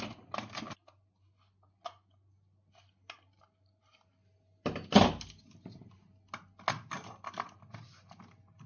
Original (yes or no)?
yes